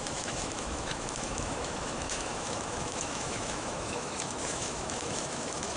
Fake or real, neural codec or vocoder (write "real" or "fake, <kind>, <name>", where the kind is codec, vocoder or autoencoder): fake, autoencoder, DAC-VAE